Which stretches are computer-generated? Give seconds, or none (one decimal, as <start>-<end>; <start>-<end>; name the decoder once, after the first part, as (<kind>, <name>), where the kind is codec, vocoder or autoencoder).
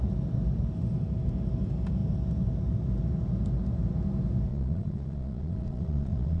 4.5-6.4 (vocoder, Vocos)